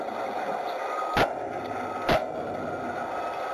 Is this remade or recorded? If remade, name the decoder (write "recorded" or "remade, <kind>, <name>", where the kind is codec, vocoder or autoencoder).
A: recorded